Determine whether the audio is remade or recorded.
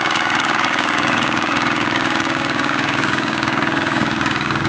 remade